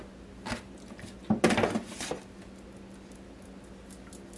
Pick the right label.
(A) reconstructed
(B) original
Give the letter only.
B